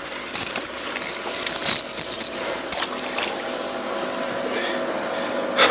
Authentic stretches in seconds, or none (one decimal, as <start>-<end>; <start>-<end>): 0.0-5.7